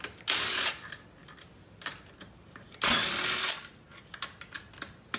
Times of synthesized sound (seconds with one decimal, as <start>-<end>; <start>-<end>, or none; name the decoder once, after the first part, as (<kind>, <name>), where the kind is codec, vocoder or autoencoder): none